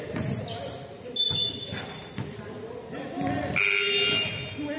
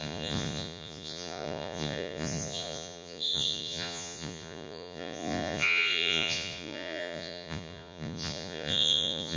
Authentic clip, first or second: first